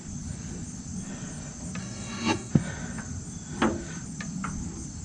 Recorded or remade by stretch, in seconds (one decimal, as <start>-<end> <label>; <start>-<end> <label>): 0.0-1.8 recorded; 1.8-2.5 remade; 2.5-5.0 recorded